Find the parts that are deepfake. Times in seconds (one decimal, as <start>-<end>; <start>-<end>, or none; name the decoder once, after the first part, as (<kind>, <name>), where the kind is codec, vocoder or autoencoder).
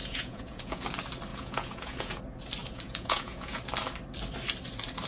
0.0-0.8 (vocoder, Vocos); 1.3-2.2; 2.6-3.6